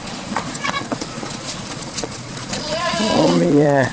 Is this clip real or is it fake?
fake